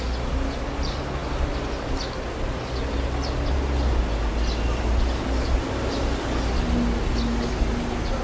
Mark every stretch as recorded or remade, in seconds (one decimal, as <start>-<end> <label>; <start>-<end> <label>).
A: 0.0-8.2 recorded